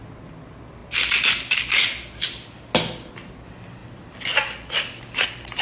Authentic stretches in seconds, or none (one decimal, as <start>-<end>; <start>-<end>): 0.0-5.6